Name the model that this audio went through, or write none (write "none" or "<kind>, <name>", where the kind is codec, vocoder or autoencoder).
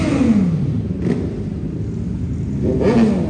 none